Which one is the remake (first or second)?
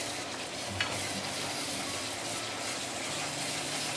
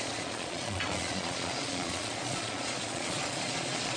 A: second